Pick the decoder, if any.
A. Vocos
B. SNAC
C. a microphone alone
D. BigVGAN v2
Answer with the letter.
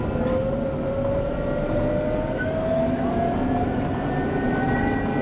C